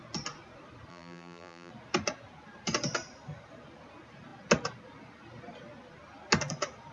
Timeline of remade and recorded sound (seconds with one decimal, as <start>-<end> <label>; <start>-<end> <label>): 0.0-0.9 recorded; 0.9-1.7 remade; 1.7-6.9 recorded